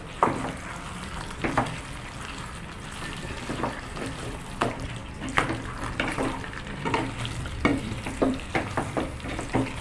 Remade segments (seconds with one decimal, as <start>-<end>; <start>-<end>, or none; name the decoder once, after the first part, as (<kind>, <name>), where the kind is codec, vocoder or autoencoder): 0.0-9.8 (vocoder, BigVGAN v2)